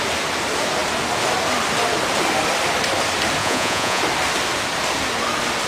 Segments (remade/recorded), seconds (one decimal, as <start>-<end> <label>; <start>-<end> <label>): 0.0-3.4 recorded; 3.4-4.0 remade; 4.0-5.7 recorded